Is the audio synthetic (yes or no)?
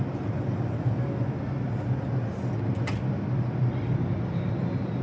no